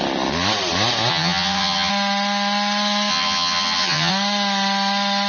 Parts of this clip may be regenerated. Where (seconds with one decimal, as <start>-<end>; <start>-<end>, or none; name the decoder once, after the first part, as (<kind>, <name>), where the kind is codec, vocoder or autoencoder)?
1.1-1.9 (vocoder, HiFi-GAN); 3.1-4.1